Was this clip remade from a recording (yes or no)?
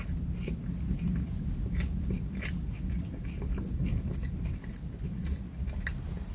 no